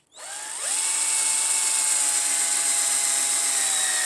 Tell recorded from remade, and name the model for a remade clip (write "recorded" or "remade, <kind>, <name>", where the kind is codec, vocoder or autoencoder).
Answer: recorded